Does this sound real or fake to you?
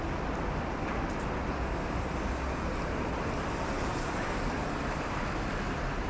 real